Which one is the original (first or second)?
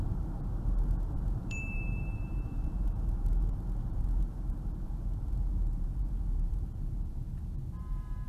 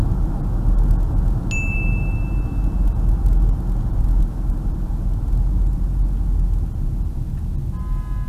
second